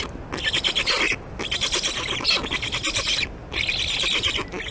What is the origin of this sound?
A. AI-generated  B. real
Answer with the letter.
B